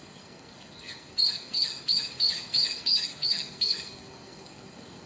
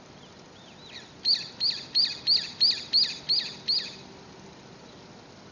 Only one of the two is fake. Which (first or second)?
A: first